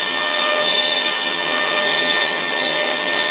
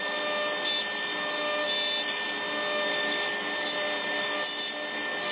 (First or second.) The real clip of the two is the second